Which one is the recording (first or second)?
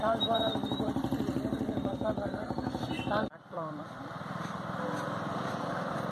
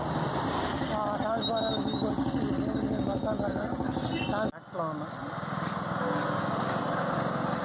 second